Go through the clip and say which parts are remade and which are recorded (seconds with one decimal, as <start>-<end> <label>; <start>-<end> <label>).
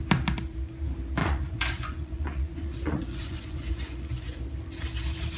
0.0-1.2 recorded; 1.2-4.4 remade; 4.4-5.4 recorded